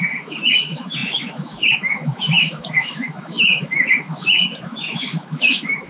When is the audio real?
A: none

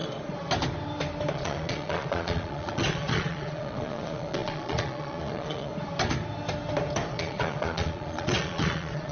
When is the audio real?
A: 0.0-1.3; 5.7-7.1